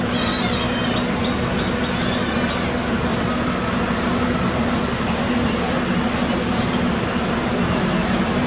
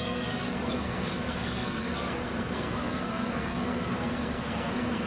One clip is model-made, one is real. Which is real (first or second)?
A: first